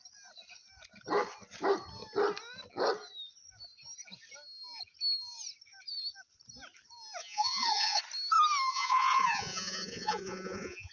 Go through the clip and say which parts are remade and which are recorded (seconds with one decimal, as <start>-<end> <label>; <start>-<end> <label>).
0.0-7.2 recorded; 7.2-8.0 remade; 8.0-8.7 recorded; 8.7-10.9 remade